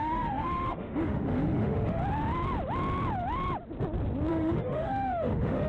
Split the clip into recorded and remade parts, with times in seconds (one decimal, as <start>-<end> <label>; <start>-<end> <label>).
0.0-2.0 remade; 2.0-4.3 recorded; 4.3-5.7 remade